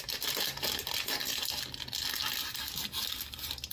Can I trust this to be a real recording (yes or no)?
yes